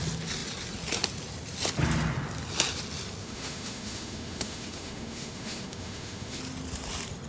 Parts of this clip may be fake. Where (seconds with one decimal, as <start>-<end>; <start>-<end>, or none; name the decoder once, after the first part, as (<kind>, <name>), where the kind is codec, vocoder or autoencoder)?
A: 3.2-6.4 (autoencoder, DAC-VAE)